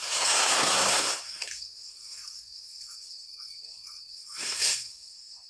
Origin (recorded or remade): remade